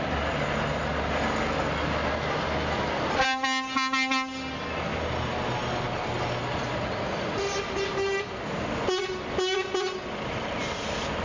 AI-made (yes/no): no